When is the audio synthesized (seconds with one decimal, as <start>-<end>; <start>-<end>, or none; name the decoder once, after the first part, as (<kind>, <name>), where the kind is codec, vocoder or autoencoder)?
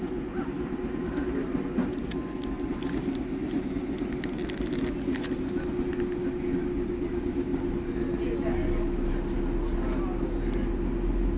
none